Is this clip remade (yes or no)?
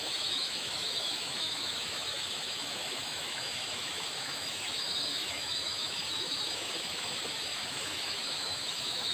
yes